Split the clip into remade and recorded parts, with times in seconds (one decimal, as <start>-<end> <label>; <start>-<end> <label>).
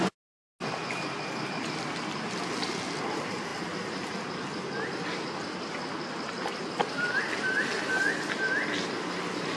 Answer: 0.0-9.6 recorded